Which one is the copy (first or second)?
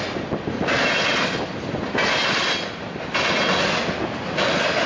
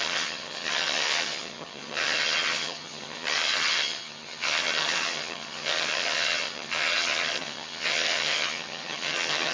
second